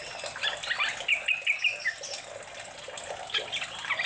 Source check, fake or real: real